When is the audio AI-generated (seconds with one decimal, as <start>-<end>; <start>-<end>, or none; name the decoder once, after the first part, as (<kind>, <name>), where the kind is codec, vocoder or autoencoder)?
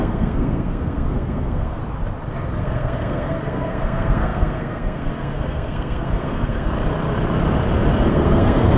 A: 0.0-1.8 (codec, SNAC); 2.6-6.7; 8.1-8.8